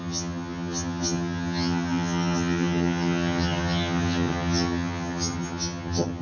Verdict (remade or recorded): remade